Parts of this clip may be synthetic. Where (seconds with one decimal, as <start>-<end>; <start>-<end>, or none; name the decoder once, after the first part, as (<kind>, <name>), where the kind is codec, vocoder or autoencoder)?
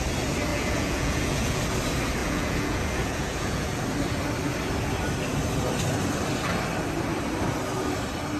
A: 0.5-1.6 (vocoder, Vocos); 2.2-3.8